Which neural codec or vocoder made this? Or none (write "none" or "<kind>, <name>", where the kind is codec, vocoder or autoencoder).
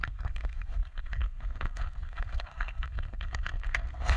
codec, SNAC